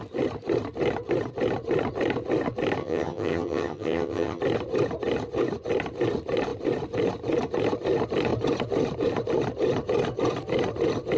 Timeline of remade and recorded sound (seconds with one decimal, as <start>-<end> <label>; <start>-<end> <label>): 0.0-2.8 recorded; 2.8-4.4 remade; 4.4-11.2 recorded